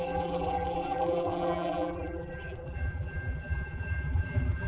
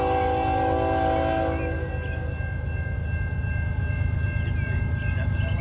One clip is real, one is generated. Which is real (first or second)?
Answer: second